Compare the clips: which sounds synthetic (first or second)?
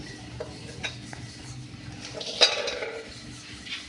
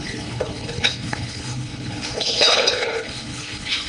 second